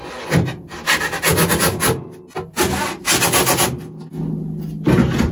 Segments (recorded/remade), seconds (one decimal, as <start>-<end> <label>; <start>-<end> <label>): 0.0-5.3 recorded